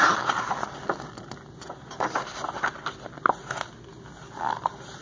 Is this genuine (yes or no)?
yes